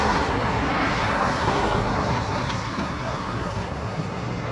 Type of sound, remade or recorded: remade